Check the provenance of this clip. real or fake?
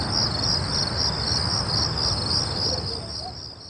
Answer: real